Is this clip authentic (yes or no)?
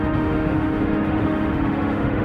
no